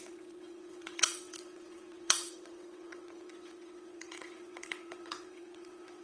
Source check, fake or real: fake